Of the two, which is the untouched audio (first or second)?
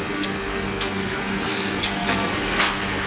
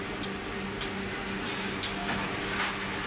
second